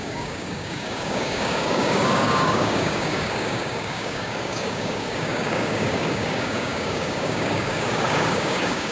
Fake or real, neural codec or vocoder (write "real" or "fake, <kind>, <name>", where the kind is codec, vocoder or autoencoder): fake, codec, DAC